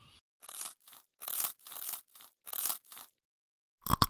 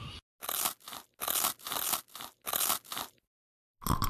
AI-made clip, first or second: first